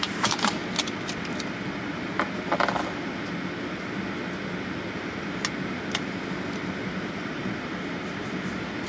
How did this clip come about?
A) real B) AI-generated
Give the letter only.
A